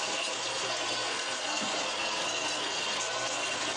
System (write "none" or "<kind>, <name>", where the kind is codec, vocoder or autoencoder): codec, SNAC